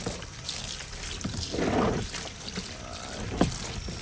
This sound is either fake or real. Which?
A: real